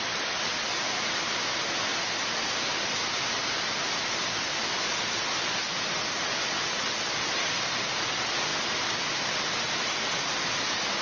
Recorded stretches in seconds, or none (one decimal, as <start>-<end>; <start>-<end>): 0.0-11.0